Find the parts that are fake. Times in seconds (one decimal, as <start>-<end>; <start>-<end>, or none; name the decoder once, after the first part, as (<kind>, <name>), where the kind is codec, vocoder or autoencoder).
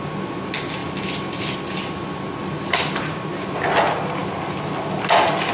none